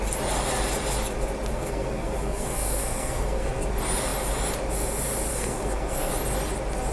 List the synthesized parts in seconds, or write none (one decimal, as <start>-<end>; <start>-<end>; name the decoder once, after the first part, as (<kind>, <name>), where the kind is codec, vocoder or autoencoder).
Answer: 1.5-3.6 (codec, SNAC); 5.3-6.1